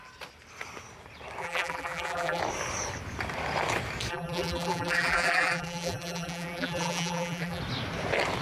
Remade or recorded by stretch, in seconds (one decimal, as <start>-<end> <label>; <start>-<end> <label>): 0.0-1.4 recorded; 1.4-2.4 remade; 2.4-4.1 recorded; 4.1-7.6 remade; 7.6-8.4 recorded